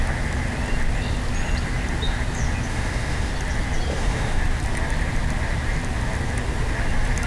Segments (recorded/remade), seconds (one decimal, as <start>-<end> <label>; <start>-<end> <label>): 0.0-2.7 recorded; 2.7-3.3 remade; 3.3-3.9 recorded; 3.9-4.4 remade; 4.4-7.3 recorded

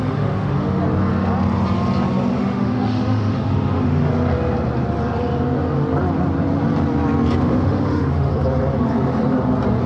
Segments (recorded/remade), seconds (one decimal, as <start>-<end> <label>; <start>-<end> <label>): 0.0-0.8 remade; 0.8-2.4 recorded; 2.4-4.1 remade; 4.1-7.4 recorded; 7.4-8.3 remade; 8.3-9.9 recorded

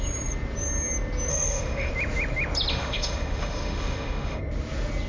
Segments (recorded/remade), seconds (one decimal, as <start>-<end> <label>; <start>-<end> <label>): 0.0-1.3 recorded; 1.3-1.9 remade; 1.9-2.7 recorded; 2.7-4.4 remade; 4.4-5.1 recorded

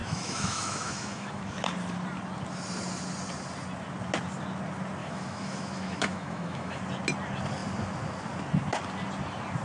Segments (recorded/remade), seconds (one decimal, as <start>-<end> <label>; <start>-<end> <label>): 0.0-1.4 remade; 1.4-5.0 recorded; 5.0-6.8 remade; 6.8-9.6 recorded

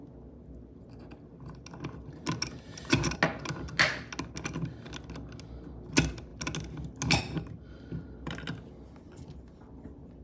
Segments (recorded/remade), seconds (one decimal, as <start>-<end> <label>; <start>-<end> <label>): 0.0-10.2 recorded

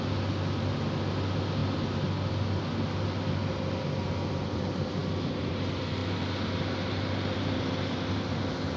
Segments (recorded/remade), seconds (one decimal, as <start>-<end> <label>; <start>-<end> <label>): 0.0-8.8 recorded

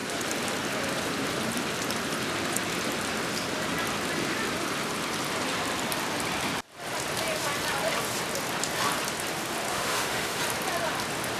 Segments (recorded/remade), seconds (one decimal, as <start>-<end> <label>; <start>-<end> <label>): 0.0-9.7 recorded; 9.7-10.4 remade; 10.4-11.4 recorded